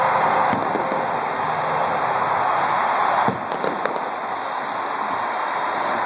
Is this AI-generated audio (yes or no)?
no